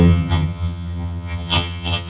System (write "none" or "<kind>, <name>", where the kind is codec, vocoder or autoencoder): vocoder, HiFi-GAN